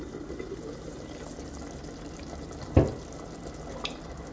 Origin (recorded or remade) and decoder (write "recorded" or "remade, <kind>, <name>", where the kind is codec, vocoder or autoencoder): recorded